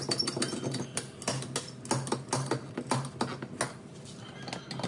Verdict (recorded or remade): recorded